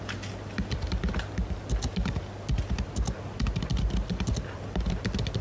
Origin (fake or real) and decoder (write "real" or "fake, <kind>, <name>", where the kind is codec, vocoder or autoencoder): real